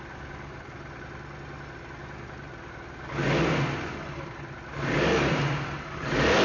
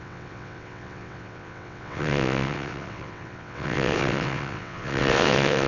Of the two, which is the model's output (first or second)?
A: second